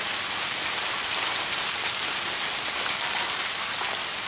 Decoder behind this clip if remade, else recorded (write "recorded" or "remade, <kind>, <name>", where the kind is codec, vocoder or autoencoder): recorded